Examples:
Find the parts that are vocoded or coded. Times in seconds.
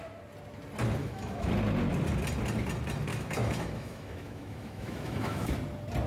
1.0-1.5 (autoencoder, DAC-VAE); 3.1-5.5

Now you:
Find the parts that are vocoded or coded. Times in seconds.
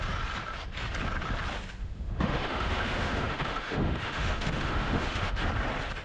1.8-5.4 (autoencoder, DAC-VAE)